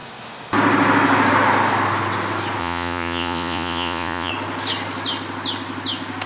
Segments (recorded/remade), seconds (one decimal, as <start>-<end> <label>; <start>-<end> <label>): 0.0-2.6 recorded; 2.6-4.3 remade; 4.3-6.3 recorded